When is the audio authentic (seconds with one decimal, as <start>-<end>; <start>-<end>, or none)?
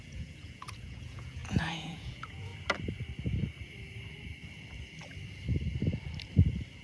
2.5-6.8